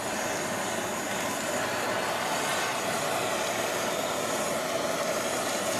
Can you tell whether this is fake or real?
real